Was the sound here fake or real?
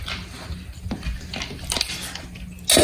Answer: real